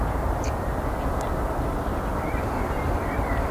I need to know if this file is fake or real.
fake